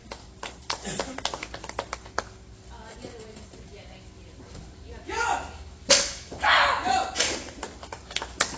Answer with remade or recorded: recorded